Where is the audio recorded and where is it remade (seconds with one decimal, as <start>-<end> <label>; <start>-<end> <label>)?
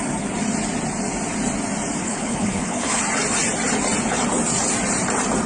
0.0-2.0 recorded; 2.0-3.0 remade; 3.0-5.5 recorded